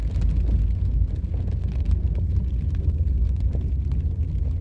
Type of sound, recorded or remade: recorded